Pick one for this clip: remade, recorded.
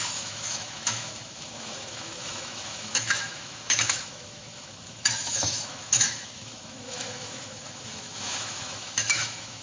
remade